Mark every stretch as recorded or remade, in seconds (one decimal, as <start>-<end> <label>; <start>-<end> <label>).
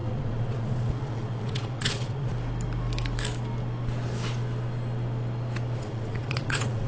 0.0-2.3 remade; 2.3-5.8 recorded; 5.8-6.9 remade